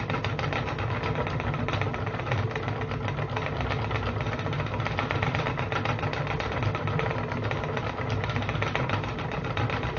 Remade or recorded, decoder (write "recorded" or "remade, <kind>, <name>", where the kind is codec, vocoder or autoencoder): recorded